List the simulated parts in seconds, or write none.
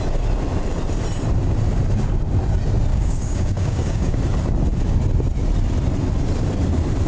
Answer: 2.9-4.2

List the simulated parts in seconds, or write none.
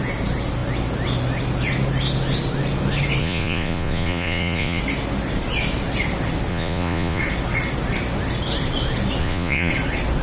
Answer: 3.2-4.8; 6.5-7.2; 9.2-9.7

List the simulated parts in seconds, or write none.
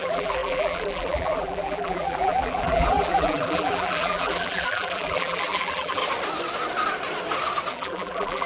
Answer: 0.0-6.0; 7.7-8.5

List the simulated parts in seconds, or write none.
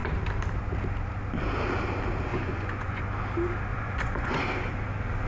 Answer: 2.3-3.0; 3.7-4.4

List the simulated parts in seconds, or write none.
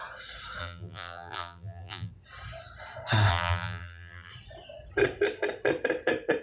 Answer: 0.6-2.1; 3.3-4.3